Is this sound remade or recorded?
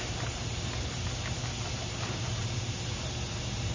recorded